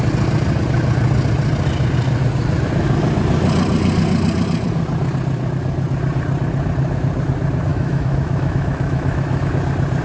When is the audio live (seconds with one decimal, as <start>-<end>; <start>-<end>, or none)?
0.0-7.7; 9.5-10.0